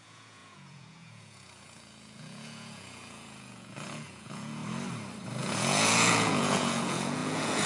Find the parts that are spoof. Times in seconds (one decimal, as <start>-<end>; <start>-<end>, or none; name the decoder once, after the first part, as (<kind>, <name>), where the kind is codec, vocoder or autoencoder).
0.0-4.6 (vocoder, Vocos); 5.4-7.7